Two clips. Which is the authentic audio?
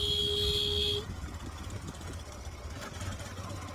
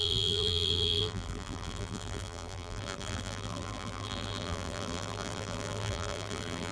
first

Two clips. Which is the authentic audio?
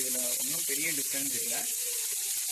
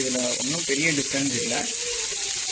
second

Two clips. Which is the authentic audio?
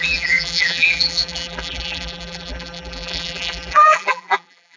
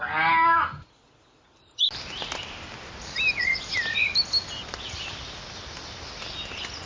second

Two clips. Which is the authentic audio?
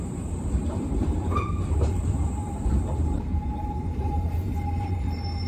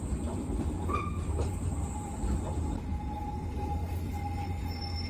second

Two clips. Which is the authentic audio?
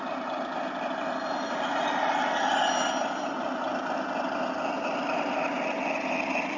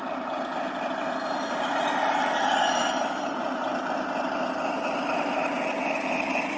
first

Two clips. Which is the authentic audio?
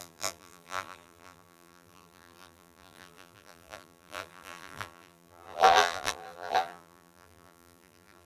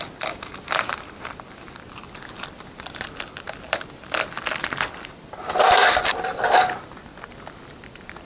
second